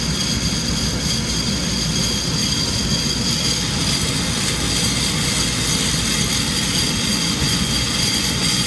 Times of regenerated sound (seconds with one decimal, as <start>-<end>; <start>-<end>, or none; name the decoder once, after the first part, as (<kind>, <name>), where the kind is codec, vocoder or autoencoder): 7.1-8.7 (vocoder, Vocos)